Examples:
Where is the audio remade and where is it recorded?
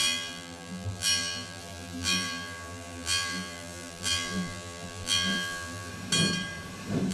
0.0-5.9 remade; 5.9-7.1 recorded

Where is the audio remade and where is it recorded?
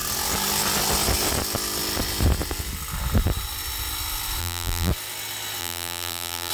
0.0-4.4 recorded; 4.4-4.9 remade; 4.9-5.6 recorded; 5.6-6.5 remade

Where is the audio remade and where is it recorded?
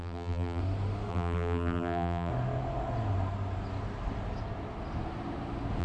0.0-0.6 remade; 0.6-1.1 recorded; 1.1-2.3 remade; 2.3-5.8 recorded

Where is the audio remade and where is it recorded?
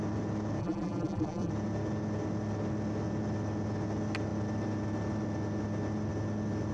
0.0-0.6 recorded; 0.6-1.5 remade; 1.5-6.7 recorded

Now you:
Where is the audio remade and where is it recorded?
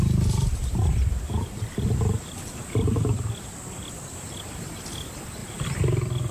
0.0-6.3 remade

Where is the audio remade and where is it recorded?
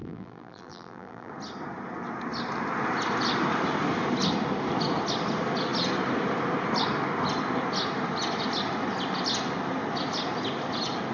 0.0-1.3 remade; 1.3-11.1 recorded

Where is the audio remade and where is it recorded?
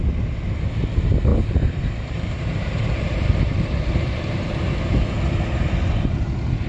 0.0-1.3 recorded; 1.3-4.8 remade; 4.8-6.7 recorded